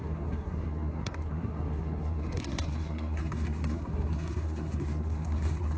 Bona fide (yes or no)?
no